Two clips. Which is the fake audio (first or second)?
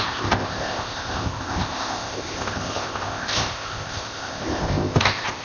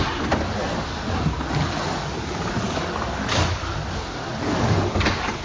first